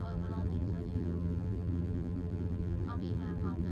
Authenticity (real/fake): fake